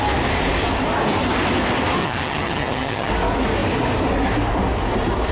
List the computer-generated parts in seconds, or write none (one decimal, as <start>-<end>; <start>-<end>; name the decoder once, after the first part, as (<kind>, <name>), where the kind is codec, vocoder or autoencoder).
2.0-3.1 (vocoder, HiFi-GAN)